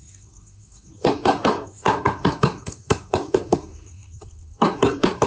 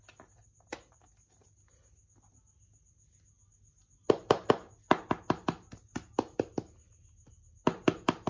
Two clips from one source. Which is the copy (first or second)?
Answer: first